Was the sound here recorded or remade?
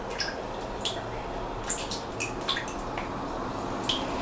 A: recorded